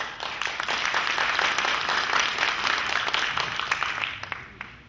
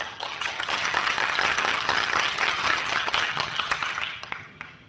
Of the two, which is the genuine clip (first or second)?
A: first